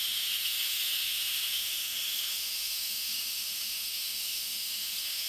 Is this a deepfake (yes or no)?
yes